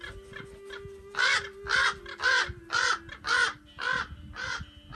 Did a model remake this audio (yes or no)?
no